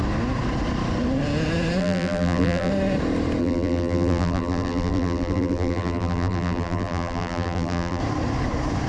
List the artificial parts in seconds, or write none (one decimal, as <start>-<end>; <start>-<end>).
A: 1.8-2.7; 3.4-8.0